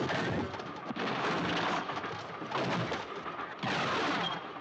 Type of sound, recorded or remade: recorded